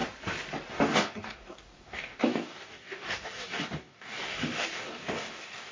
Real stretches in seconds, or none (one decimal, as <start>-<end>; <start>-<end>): 0.0-0.7